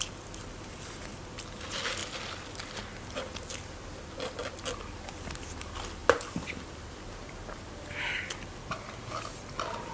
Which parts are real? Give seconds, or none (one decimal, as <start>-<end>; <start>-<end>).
0.0-9.9